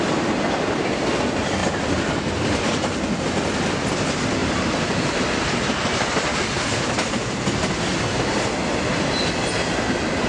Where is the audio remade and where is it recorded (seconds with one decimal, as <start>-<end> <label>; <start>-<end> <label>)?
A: 0.0-1.6 recorded; 1.6-3.2 remade; 3.2-4.4 recorded; 4.4-7.1 remade; 7.1-10.3 recorded